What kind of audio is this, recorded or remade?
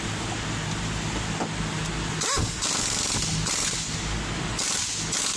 recorded